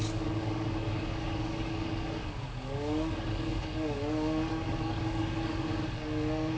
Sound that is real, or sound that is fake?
fake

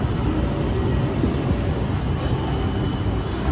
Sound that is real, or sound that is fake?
real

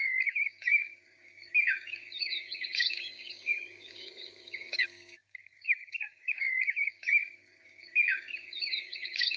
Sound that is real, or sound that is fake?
fake